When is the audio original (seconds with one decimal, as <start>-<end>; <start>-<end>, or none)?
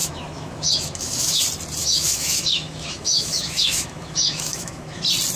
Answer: 1.4-1.8; 5.0-5.4